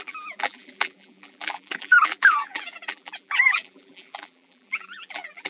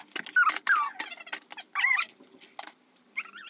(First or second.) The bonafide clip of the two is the second